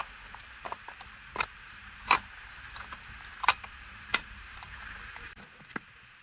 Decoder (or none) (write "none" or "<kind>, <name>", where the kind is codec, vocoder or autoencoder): vocoder, BigVGAN v2